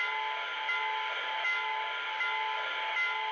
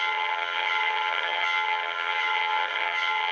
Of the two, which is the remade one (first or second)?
second